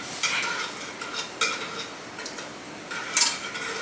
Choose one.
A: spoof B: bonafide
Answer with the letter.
B